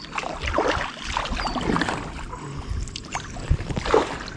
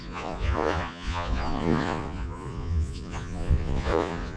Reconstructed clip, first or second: second